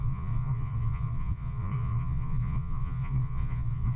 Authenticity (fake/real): fake